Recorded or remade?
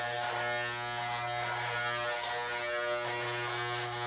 recorded